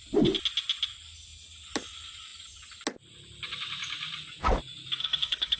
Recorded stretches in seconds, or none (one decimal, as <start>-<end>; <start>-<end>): 0.0-5.0